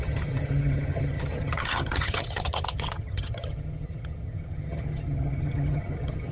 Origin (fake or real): fake